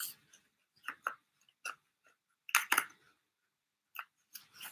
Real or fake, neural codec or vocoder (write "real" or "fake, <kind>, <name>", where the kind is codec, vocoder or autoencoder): real